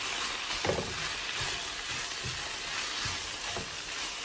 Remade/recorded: recorded